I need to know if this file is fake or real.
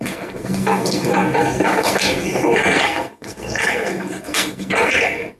fake